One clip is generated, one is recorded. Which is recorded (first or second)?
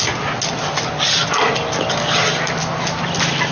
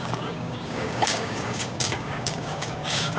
first